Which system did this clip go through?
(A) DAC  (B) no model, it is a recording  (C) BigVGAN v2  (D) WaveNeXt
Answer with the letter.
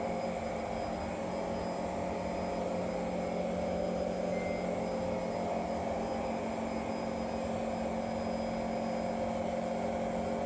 B